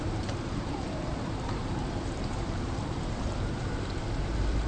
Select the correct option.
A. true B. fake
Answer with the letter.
B